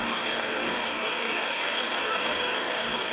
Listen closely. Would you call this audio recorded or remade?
remade